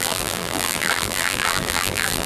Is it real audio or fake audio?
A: fake